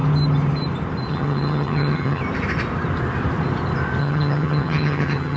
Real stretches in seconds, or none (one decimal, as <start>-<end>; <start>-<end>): 0.0-1.1; 2.2-4.0